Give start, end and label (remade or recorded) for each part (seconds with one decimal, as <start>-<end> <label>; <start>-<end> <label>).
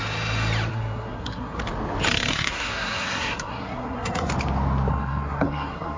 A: 0.0-0.7 recorded; 0.7-1.6 remade; 1.6-2.3 recorded; 2.3-4.3 remade; 4.3-4.9 recorded; 4.9-6.0 remade